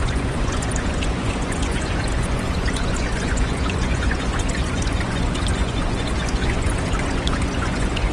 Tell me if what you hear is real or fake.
fake